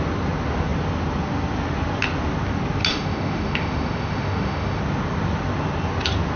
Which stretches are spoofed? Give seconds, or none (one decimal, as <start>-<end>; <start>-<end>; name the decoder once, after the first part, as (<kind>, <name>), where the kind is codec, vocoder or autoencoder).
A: 2.9-4.8 (autoencoder, DAC-VAE)